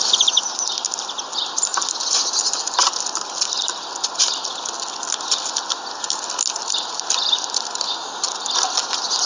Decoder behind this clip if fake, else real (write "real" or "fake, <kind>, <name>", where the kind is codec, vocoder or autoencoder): real